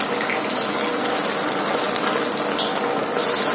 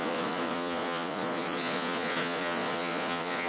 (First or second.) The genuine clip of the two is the first